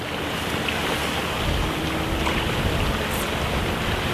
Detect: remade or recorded recorded